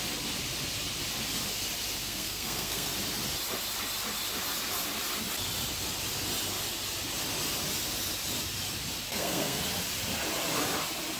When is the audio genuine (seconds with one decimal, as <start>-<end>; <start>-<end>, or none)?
0.0-2.0; 2.9-9.1; 9.6-11.2